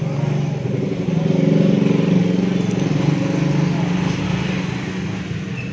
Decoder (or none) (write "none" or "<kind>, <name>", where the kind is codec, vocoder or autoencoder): none